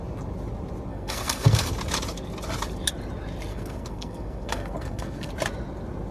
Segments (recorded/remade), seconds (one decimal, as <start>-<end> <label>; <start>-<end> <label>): 0.0-0.9 recorded; 0.9-1.7 remade; 1.7-3.5 recorded; 3.5-5.3 remade; 5.3-6.1 recorded